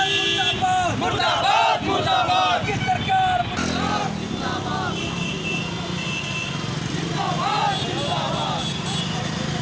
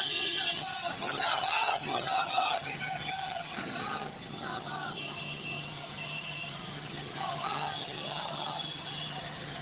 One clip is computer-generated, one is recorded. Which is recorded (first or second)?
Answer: first